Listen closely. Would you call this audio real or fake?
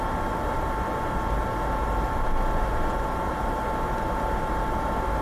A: fake